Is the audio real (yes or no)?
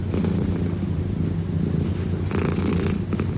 yes